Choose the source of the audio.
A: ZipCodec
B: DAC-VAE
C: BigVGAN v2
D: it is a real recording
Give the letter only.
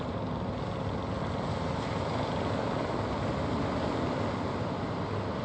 D